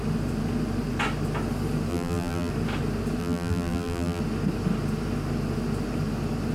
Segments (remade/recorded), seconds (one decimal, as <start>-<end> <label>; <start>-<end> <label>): 0.0-1.9 recorded; 1.9-2.5 remade; 2.5-3.2 recorded; 3.2-4.2 remade; 4.2-6.5 recorded